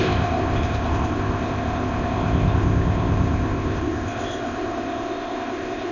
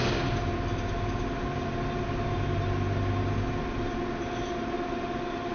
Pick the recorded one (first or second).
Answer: second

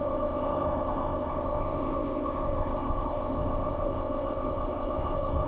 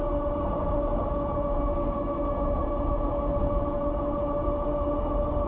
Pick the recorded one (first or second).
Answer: second